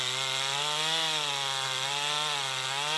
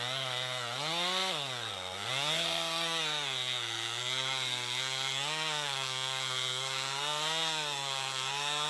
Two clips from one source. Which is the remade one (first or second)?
second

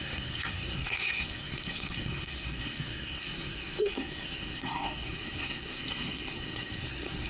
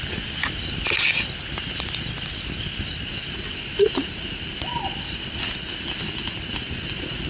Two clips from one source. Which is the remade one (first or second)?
first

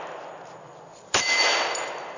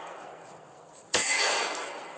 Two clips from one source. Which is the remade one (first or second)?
second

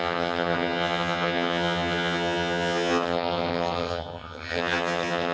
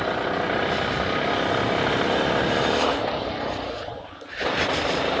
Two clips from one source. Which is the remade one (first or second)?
first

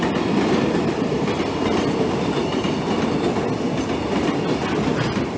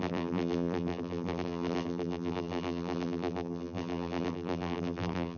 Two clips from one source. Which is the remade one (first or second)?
second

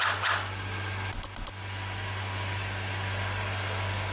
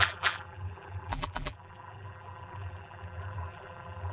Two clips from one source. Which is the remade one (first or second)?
second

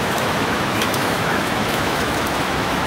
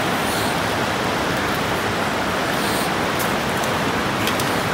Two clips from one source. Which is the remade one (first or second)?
first